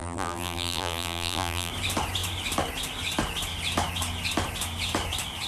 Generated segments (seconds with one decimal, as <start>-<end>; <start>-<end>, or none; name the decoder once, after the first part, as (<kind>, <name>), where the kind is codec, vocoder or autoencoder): 0.0-1.7 (vocoder, BigVGAN v2)